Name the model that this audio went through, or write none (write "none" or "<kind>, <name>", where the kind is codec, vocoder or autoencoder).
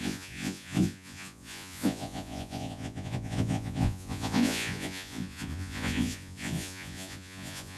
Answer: vocoder, Vocos